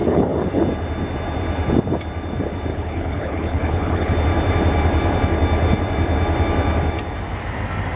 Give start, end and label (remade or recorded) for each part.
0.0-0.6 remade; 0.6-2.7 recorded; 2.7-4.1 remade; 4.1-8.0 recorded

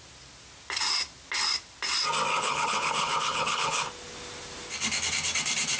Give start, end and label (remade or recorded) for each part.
0.0-2.3 recorded; 2.3-3.9 remade; 3.9-5.8 recorded

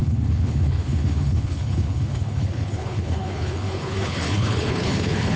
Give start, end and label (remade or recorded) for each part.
0.0-5.4 remade

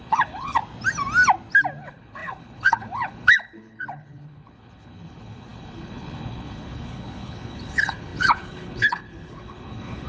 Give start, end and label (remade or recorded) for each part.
0.0-0.6 remade; 0.6-1.8 recorded; 1.8-10.1 remade